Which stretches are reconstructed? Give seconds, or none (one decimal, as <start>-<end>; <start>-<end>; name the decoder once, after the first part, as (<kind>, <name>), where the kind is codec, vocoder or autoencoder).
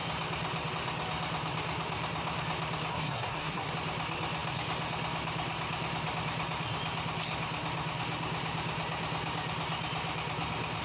2.9-3.7 (codec, SNAC)